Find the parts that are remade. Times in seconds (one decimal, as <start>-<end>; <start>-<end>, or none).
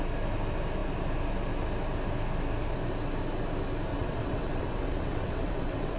3.9-6.0